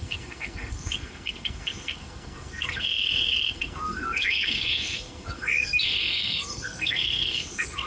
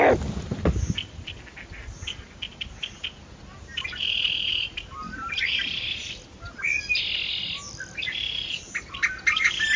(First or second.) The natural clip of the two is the second